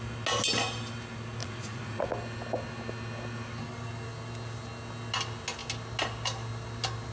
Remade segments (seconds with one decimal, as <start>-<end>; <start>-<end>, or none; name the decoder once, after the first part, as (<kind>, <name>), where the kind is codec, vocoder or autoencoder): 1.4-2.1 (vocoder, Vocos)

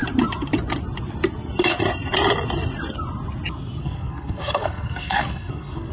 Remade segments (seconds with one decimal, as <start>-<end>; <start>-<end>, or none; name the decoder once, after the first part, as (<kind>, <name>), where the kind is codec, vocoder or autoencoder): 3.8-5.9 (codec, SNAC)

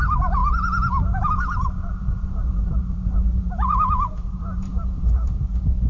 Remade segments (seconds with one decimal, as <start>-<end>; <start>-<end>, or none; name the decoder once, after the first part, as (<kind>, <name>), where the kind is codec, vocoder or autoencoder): 2.0-5.5 (vocoder, BigVGAN v2)

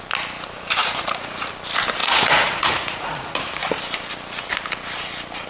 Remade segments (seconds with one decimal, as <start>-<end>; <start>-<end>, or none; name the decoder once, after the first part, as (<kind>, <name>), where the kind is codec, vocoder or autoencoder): 0.8-1.5 (vocoder, Vocos); 2.0-3.8